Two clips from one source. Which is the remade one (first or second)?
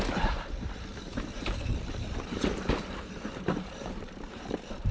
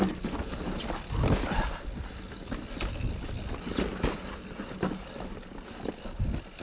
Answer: first